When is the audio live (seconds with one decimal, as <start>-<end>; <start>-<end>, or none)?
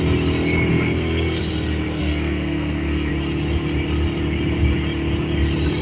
0.0-0.7; 1.4-2.0; 3.1-5.8